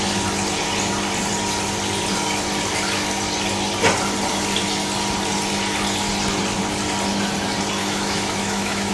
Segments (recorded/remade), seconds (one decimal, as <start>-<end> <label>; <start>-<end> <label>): 0.0-7.8 recorded; 7.8-8.9 remade